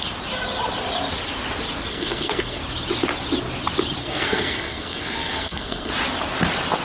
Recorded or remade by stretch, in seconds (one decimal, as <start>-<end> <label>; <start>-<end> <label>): 0.0-1.9 recorded; 1.9-2.6 remade; 2.6-4.0 recorded; 4.0-5.9 remade; 5.9-6.8 recorded